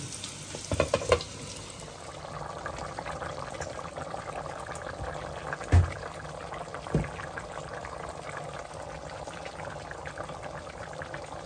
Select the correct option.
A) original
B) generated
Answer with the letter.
A